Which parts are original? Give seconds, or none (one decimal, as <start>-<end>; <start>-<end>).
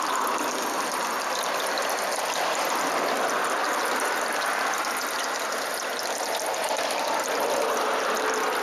0.0-3.6; 4.8-8.6